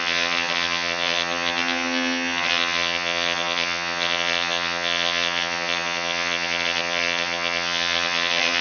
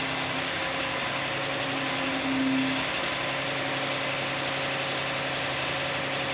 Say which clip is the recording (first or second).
second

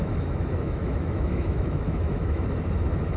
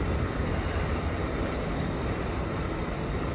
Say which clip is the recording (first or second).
second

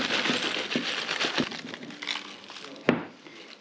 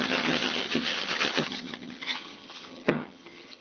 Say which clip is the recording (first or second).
first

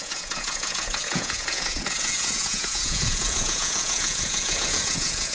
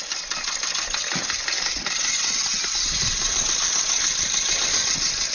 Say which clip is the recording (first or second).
second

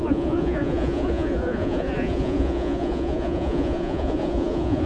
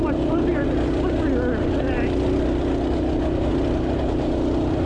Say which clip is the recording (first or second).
second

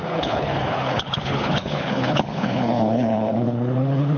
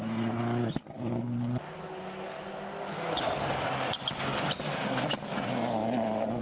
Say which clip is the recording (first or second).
second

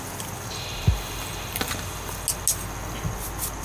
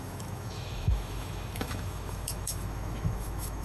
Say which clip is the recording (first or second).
first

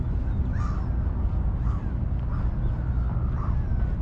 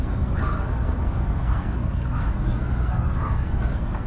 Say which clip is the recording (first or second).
first